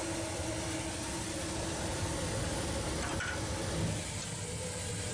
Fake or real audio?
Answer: real